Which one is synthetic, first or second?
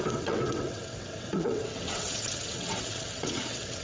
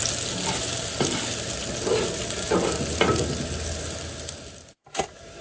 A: first